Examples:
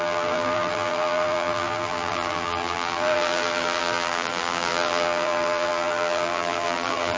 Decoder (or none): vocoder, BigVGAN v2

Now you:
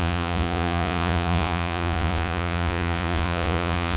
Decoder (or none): vocoder, Vocos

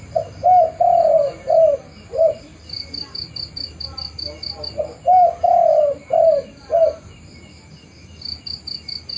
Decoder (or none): none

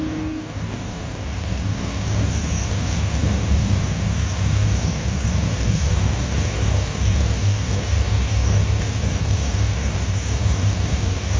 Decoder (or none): codec, DAC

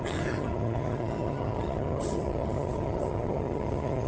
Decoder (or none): vocoder, HiFi-GAN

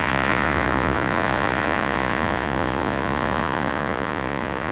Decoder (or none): vocoder, Vocos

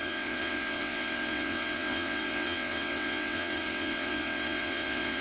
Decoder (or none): vocoder, WaveNeXt